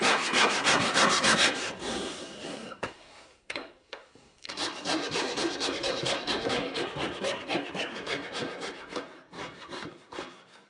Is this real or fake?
fake